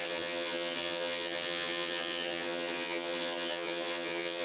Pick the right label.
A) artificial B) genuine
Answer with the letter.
A